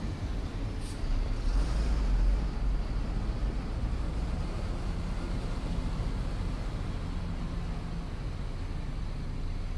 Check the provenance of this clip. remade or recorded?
recorded